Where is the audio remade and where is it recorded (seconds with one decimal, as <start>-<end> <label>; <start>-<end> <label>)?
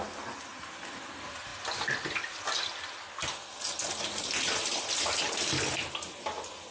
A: 0.0-6.7 recorded